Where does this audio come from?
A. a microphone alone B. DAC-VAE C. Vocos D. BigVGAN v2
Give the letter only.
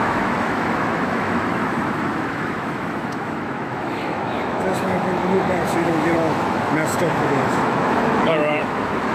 B